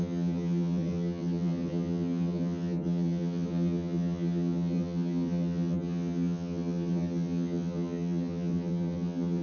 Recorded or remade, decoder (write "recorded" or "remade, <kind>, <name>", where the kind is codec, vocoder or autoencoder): remade, vocoder, HiFi-GAN